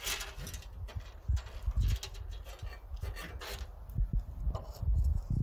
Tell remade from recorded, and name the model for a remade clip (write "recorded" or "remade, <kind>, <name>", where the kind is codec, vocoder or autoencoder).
recorded